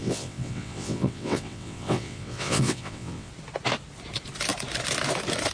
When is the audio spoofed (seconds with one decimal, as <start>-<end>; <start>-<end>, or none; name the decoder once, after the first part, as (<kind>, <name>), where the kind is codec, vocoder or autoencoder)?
0.0-3.3 (vocoder, WaveNeXt)